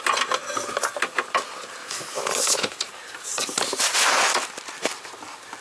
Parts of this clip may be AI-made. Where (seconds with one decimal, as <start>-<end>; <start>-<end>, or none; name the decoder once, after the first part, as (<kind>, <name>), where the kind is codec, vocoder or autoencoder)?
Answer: 1.8-2.8 (autoencoder, DAC-VAE)